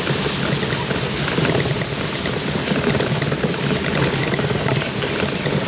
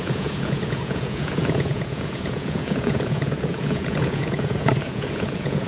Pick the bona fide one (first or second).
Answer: first